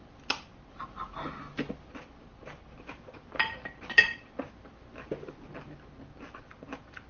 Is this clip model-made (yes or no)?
no